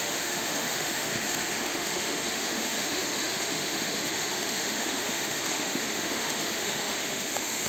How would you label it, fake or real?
fake